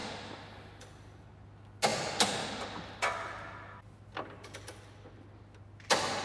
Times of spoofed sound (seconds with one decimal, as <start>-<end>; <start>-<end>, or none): none